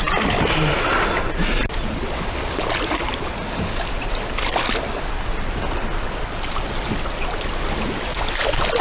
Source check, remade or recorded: recorded